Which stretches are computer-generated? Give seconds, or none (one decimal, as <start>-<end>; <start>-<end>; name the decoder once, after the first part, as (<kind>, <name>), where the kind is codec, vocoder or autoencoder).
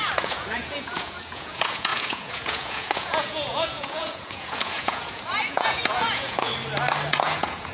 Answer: 0.0-6.5 (vocoder, Vocos); 7.1-7.7